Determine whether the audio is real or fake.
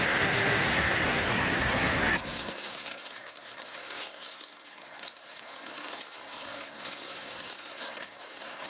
fake